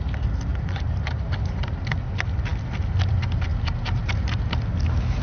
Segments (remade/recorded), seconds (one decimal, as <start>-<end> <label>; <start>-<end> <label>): 0.0-0.5 recorded; 0.5-1.8 remade; 1.8-3.5 recorded; 3.5-4.0 remade; 4.0-5.2 recorded